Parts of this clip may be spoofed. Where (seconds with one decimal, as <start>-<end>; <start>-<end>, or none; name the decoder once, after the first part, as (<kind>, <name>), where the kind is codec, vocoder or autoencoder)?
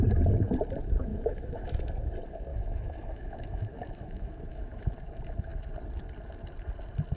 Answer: 1.1-1.9 (autoencoder, DAC-VAE); 2.5-4.9